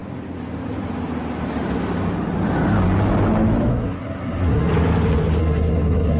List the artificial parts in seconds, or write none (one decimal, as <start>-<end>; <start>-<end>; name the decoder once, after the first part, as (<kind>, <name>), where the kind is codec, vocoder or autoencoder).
3.7-4.7 (codec, SNAC); 5.4-6.2